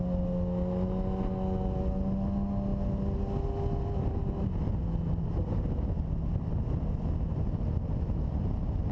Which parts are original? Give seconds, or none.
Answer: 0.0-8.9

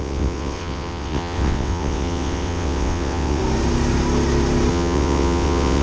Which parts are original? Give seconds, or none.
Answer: 3.4-4.7

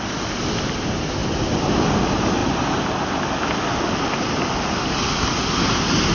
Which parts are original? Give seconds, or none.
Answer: 0.0-6.1

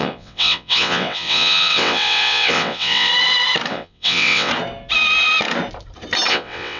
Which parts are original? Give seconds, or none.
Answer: 3.1-3.7; 4.5-6.3

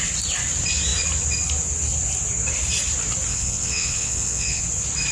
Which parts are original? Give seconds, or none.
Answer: 0.0-3.3; 4.6-5.1